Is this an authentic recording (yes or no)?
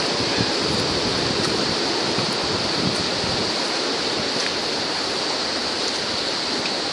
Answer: yes